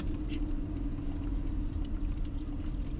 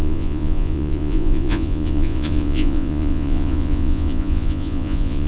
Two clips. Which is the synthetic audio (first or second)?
second